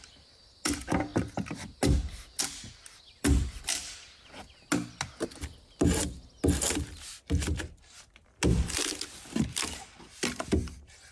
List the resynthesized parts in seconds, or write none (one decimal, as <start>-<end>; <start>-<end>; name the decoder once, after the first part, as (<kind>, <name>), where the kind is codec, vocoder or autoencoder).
none